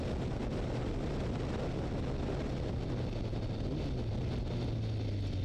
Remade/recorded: recorded